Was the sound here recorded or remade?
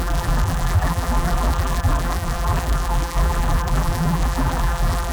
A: remade